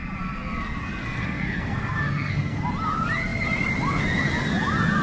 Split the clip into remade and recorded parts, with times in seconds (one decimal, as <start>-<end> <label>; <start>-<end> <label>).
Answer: 0.0-1.0 recorded; 1.0-2.6 remade; 2.6-5.0 recorded